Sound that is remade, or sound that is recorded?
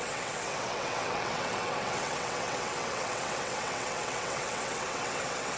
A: remade